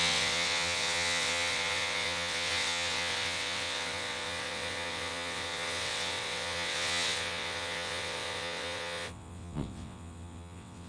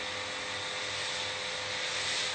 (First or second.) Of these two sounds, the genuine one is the second